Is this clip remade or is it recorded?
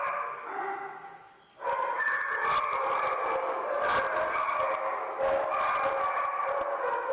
recorded